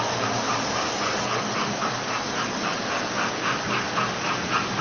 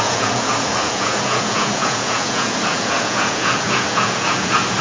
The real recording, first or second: first